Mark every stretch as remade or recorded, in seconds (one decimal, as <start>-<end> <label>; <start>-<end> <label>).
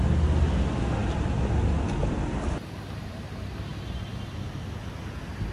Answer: 0.0-5.5 recorded